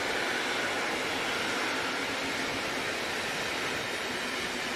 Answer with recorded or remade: recorded